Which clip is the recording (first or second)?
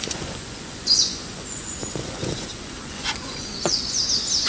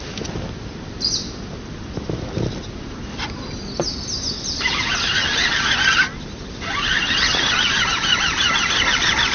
second